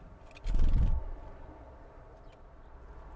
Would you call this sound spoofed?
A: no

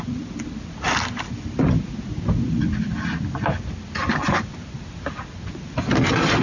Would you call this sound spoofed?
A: no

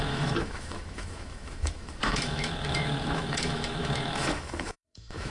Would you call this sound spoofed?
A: yes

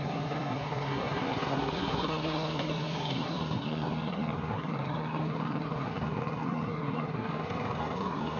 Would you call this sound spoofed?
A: yes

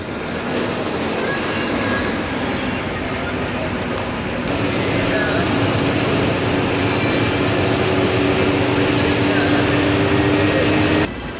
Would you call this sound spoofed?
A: no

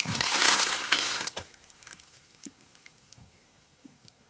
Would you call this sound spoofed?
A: yes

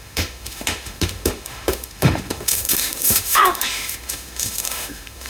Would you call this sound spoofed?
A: yes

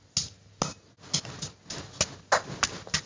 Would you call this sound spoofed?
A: no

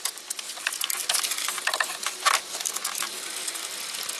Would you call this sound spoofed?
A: no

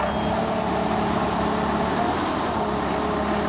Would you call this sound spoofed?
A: no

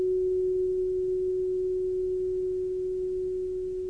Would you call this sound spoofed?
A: no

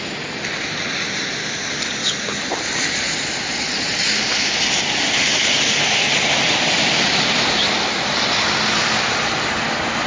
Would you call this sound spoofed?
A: no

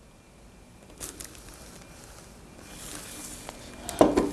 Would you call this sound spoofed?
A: no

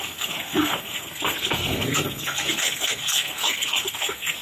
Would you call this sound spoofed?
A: yes